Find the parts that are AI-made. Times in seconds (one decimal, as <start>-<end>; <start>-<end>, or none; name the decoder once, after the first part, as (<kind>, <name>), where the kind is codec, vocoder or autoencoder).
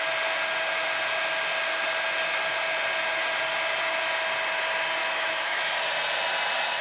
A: 5.0-5.6 (autoencoder, DAC-VAE)